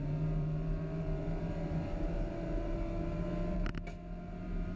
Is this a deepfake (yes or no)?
yes